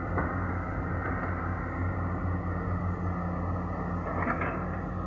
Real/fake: real